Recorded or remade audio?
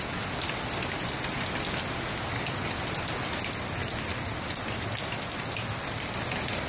recorded